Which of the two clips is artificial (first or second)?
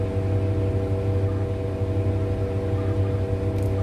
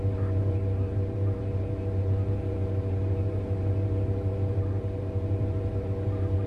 second